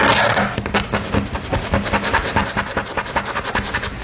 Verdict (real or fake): real